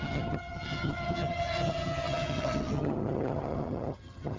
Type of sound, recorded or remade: remade